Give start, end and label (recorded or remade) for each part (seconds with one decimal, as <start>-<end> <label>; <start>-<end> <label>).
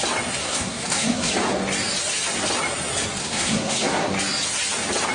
0.0-0.4 recorded; 0.4-1.3 remade; 1.3-3.2 recorded; 3.2-4.1 remade; 4.1-5.1 recorded